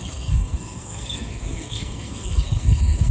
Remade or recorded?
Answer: remade